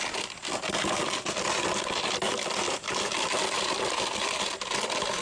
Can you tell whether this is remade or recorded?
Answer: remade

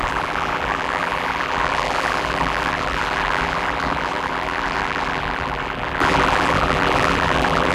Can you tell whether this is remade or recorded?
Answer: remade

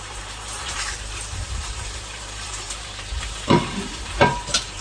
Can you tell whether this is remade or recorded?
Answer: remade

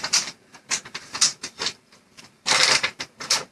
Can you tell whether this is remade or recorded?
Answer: remade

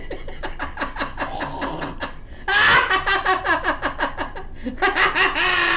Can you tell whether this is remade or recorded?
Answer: recorded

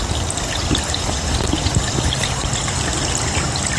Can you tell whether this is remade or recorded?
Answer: recorded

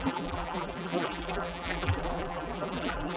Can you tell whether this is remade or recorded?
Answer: remade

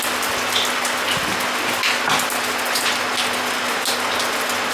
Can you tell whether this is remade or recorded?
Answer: recorded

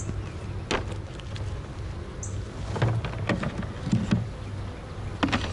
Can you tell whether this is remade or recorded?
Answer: recorded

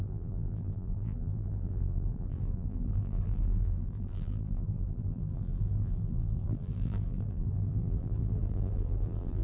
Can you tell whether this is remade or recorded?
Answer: remade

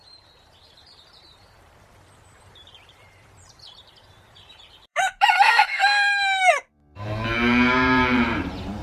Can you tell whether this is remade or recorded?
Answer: remade